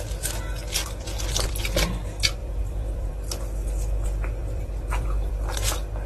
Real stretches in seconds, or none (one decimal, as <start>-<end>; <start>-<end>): 0.0-0.8; 1.5-2.4; 3.1-4.4; 5.3-6.1